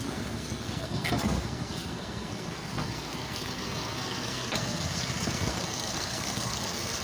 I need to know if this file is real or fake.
fake